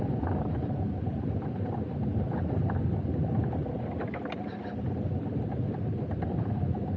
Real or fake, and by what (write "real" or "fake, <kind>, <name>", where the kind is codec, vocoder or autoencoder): real